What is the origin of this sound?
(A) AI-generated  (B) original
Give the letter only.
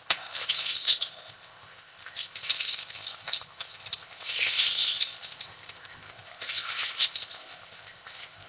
A